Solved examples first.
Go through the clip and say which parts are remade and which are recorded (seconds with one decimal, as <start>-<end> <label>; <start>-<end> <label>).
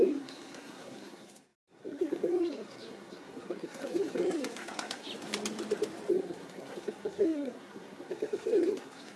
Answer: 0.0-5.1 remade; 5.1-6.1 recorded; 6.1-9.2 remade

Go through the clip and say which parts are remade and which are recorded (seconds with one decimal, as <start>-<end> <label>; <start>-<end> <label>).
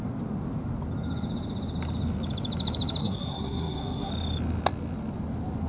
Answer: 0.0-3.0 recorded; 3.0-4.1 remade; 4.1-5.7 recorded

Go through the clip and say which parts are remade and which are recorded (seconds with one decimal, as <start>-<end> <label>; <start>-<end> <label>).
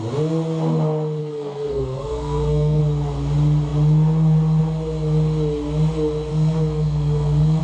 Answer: 0.0-1.2 recorded; 1.2-2.8 remade; 2.8-6.3 recorded; 6.3-7.6 remade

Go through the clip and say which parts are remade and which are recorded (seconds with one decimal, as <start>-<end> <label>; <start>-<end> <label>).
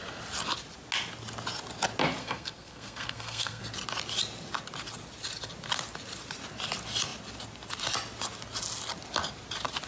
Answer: 0.0-2.2 recorded; 2.2-3.6 remade; 3.6-9.9 recorded